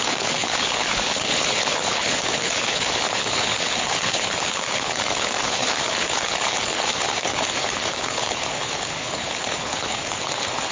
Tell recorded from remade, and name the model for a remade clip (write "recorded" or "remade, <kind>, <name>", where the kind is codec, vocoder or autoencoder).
remade, codec, HILCodec